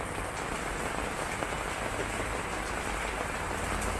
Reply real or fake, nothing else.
real